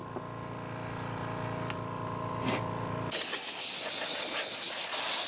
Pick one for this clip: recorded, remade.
recorded